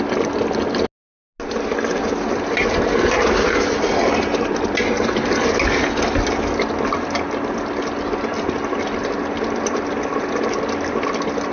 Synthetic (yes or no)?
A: no